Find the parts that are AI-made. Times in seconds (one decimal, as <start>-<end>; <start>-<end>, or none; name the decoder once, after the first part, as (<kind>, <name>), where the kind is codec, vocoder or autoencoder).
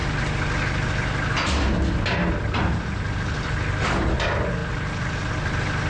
none